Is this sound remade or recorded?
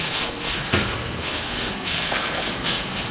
remade